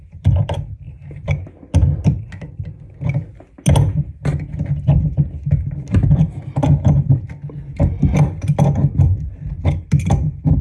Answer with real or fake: real